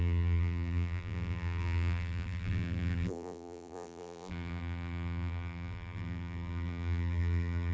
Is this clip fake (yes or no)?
yes